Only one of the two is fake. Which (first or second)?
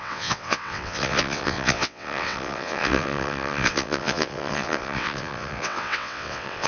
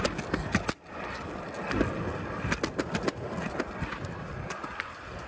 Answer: first